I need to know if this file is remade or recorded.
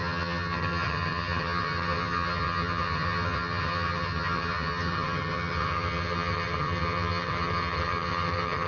remade